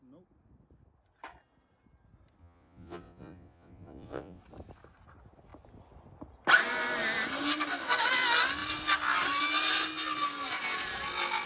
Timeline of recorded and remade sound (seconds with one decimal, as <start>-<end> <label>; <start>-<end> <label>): 0.0-2.4 recorded; 2.4-4.4 remade; 4.4-11.5 recorded